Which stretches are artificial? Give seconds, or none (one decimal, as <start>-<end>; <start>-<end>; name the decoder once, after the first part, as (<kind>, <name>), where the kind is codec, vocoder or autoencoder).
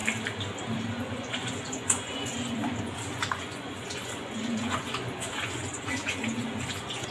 0.9-7.1 (vocoder, Vocos)